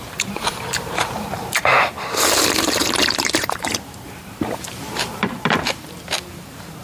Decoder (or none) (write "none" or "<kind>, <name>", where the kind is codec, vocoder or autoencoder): vocoder, BigVGAN v2